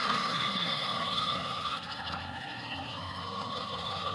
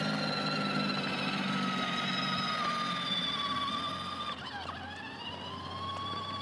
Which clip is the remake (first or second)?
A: first